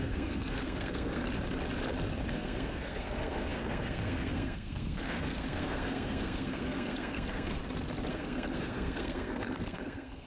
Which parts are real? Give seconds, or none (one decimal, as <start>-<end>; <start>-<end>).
1.2-2.3; 7.6-8.1